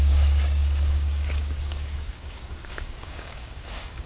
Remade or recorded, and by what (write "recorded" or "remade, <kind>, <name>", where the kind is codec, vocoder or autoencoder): remade, codec, DAC